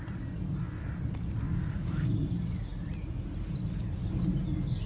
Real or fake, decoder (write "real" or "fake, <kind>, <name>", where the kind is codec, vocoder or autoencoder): real